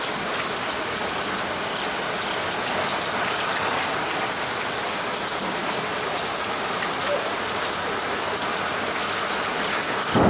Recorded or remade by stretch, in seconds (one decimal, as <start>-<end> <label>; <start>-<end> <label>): 0.0-10.3 recorded